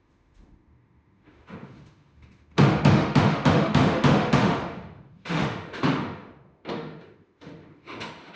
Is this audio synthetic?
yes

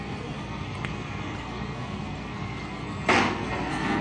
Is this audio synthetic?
yes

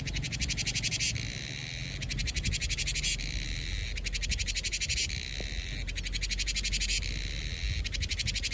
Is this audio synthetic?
no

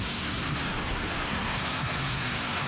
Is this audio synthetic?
yes